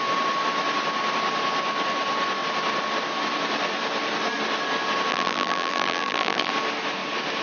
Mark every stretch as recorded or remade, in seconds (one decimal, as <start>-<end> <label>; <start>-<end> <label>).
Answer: 0.0-5.1 recorded; 5.1-6.5 remade; 6.5-7.4 recorded